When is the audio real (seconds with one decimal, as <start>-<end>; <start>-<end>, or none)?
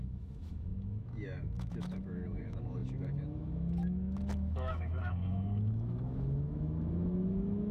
none